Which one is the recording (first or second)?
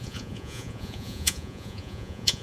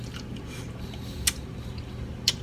second